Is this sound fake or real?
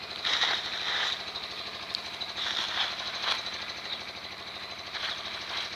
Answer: real